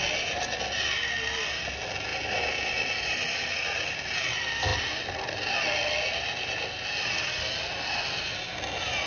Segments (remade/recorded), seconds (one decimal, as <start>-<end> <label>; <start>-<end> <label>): 0.0-9.1 recorded

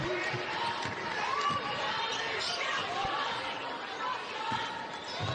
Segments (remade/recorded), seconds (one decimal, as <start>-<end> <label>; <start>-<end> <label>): 0.0-5.3 recorded

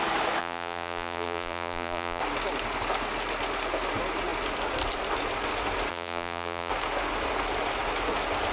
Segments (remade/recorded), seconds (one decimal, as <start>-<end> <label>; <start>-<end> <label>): 0.0-0.4 recorded; 0.4-2.2 remade; 2.2-5.9 recorded; 5.9-6.7 remade; 6.7-8.5 recorded